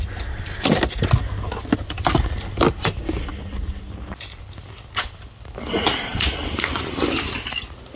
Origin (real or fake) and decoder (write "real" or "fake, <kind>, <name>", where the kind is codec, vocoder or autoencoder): real